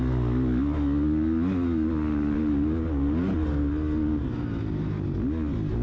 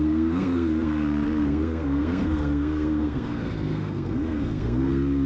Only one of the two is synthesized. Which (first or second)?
second